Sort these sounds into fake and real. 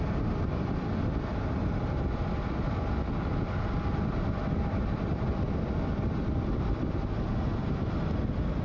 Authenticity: fake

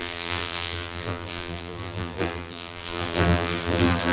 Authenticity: fake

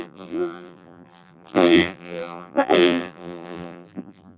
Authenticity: fake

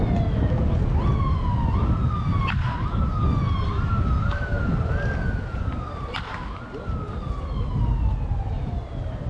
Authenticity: real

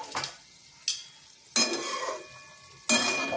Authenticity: real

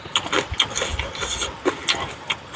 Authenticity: real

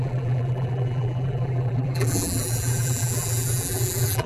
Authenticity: fake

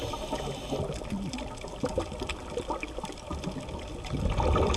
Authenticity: real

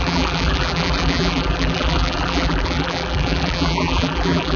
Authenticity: fake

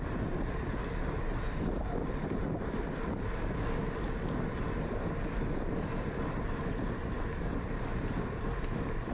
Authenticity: fake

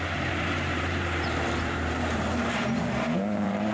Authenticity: fake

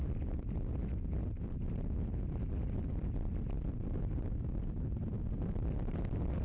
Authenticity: fake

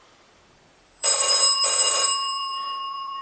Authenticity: fake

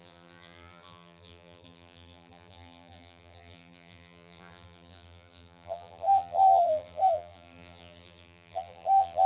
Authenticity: fake